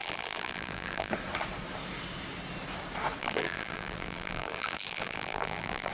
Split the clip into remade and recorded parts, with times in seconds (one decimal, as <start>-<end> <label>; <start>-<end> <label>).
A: 0.0-1.1 remade; 1.1-3.2 recorded; 3.2-5.9 remade